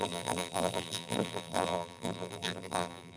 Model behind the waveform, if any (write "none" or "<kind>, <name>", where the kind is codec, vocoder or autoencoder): vocoder, BigVGAN v2